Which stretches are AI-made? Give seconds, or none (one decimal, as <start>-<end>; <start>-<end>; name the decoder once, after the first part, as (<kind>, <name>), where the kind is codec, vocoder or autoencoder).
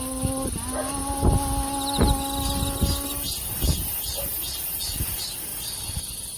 none